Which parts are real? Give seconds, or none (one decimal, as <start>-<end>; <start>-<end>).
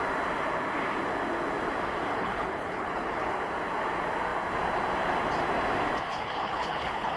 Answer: 0.0-2.1; 3.3-6.1